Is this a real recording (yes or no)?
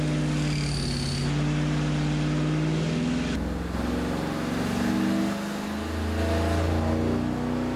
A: yes